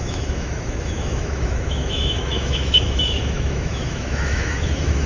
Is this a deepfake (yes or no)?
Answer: yes